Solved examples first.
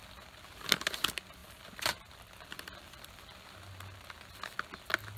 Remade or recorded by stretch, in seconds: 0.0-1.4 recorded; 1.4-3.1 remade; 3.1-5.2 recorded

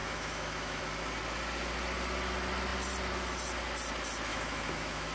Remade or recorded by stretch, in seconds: 0.0-0.8 remade; 0.8-4.3 recorded; 4.3-5.1 remade

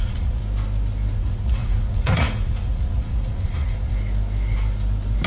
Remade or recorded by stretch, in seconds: 0.0-0.4 remade; 0.4-1.1 recorded; 1.1-3.9 remade; 3.9-5.3 recorded

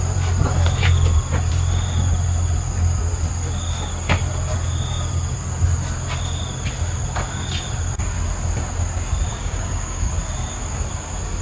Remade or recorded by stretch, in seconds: 0.0-9.3 recorded; 9.3-10.1 remade; 10.1-11.4 recorded

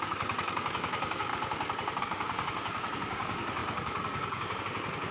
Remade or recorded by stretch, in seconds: 0.0-1.3 remade; 1.3-2.0 recorded; 2.0-5.1 remade